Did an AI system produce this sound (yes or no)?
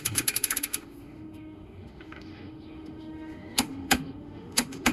yes